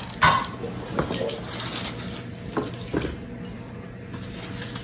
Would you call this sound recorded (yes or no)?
yes